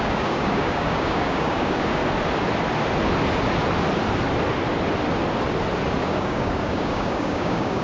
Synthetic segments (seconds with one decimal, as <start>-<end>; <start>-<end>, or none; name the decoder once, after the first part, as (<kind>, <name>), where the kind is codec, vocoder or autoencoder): 0.0-2.0 (codec, DAC); 6.0-7.8